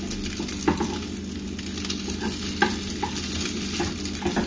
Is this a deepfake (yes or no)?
no